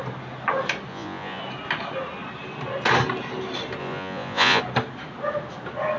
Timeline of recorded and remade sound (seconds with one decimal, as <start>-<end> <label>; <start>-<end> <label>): 0.0-0.9 recorded; 0.9-1.4 remade; 1.4-3.8 recorded; 3.8-4.6 remade; 4.6-6.0 recorded